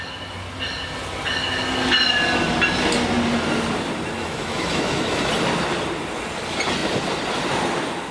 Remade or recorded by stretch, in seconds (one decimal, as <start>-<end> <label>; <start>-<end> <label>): 0.0-4.2 recorded; 4.2-5.3 remade; 5.3-8.1 recorded